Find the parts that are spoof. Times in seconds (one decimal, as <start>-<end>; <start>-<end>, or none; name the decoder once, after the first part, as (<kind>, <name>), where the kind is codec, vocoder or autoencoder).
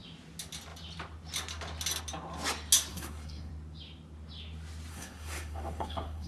2.9-3.5 (codec, SNAC); 4.9-6.3